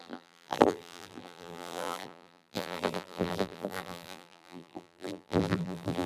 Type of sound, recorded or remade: remade